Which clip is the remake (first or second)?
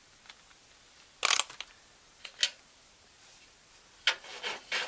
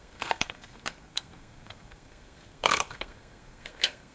second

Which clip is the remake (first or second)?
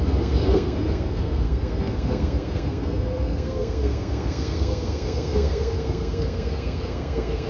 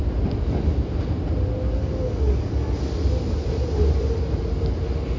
first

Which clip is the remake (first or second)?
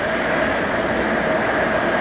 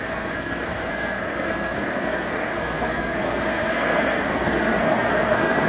second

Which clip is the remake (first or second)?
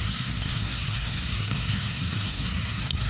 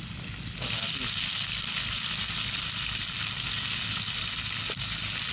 first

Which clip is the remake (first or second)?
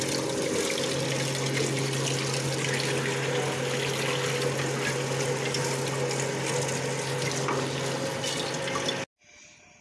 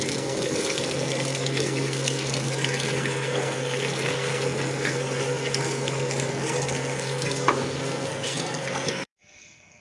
second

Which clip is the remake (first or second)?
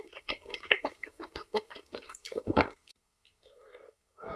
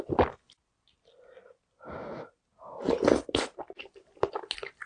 first